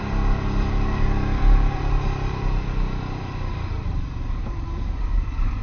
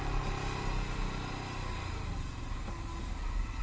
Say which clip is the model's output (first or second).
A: first